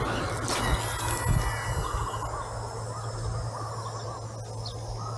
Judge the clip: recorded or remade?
recorded